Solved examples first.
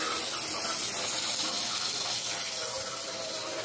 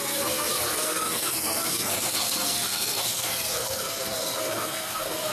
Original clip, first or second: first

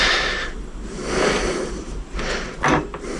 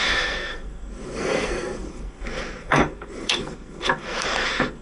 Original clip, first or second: first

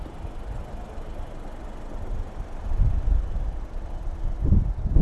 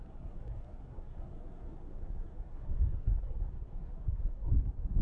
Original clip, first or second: first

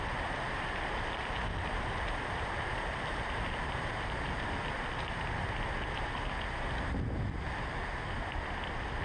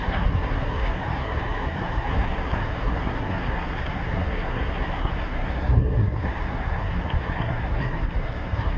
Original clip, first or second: first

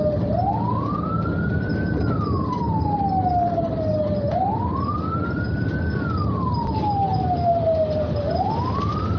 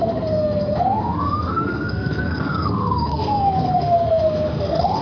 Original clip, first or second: first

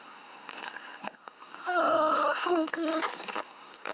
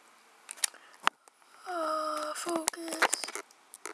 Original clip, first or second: second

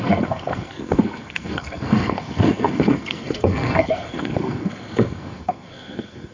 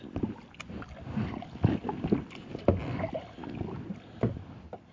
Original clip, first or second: second